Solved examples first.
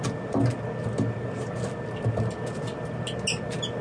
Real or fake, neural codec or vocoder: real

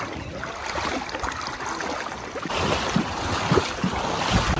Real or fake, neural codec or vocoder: real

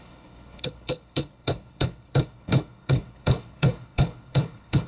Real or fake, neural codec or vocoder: fake, codec, HILCodec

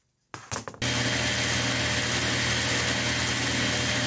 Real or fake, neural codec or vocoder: real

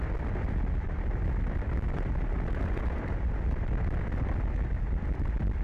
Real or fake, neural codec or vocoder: real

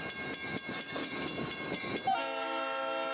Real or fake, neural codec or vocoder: real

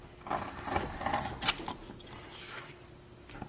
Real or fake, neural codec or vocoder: real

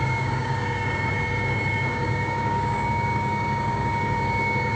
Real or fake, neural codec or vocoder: fake, codec, DAC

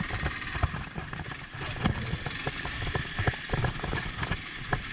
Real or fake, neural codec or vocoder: real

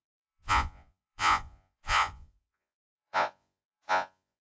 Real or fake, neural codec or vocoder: fake, vocoder, Vocos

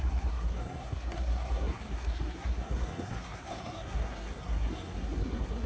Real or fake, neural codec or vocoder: fake, codec, SNAC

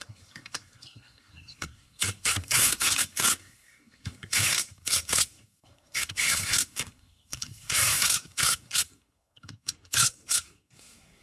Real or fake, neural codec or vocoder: fake, codec, SNAC